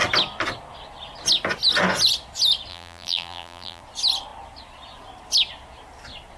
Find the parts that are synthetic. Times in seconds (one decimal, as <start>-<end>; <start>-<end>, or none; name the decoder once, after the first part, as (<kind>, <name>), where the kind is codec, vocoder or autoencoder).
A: 2.7-3.8 (vocoder, BigVGAN v2)